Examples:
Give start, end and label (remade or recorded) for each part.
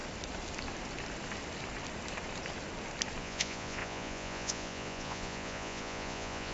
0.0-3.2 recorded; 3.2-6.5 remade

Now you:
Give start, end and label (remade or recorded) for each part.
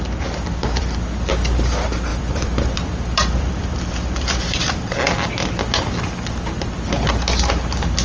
0.0-0.5 recorded; 0.5-1.3 remade; 1.3-2.1 recorded; 2.1-4.6 remade; 4.6-8.0 recorded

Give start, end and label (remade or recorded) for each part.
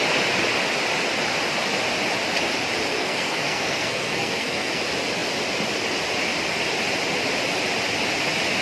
0.0-2.9 recorded; 2.9-4.8 remade; 4.8-8.6 recorded